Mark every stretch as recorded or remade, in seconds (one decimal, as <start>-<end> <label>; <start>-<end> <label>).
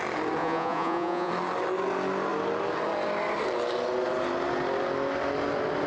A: 0.0-0.4 recorded; 0.4-1.3 remade; 1.3-5.9 recorded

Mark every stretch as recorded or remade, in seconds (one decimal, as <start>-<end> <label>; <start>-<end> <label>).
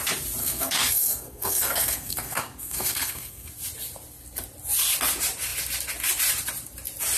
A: 0.0-0.4 recorded; 0.4-3.5 remade; 3.5-7.2 recorded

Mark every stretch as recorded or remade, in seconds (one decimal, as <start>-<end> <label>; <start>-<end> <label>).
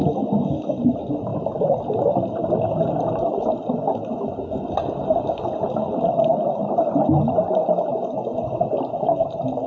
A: 0.0-9.7 recorded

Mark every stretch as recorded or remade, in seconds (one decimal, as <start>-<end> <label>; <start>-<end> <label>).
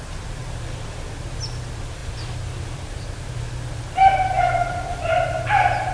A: 0.0-0.4 recorded; 0.4-0.9 remade; 0.9-2.0 recorded; 2.0-3.5 remade; 3.5-4.0 recorded; 4.0-5.9 remade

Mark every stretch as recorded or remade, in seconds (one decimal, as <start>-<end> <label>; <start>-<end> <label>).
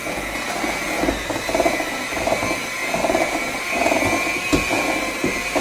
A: 0.0-5.6 recorded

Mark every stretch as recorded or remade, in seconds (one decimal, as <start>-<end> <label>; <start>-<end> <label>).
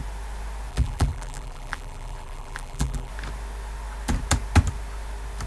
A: 0.0-0.7 recorded; 0.7-3.1 remade; 3.1-5.5 recorded